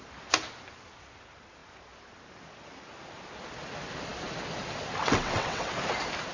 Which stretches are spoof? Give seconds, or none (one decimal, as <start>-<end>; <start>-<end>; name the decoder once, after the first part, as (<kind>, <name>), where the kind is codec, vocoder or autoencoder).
5.0-5.7 (vocoder, WaveNeXt)